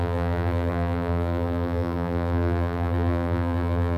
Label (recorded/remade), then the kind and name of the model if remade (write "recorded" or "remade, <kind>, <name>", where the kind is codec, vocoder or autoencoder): remade, vocoder, BigVGAN v2